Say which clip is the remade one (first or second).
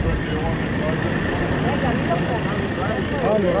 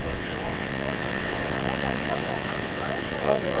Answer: second